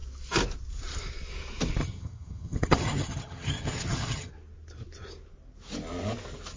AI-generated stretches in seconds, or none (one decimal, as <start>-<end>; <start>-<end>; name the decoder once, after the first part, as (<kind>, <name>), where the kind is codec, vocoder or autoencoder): 1.8-4.3 (vocoder, HiFi-GAN)